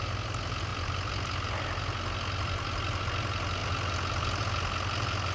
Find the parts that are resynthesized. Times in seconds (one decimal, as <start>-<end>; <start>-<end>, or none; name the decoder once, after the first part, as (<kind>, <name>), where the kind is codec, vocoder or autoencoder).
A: none